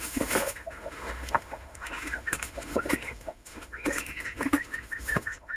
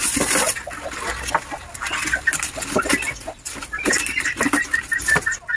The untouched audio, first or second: second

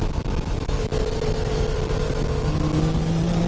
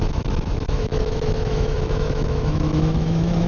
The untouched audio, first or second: first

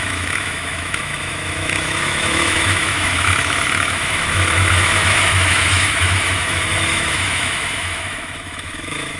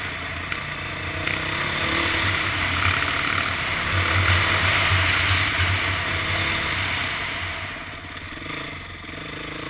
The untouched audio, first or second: second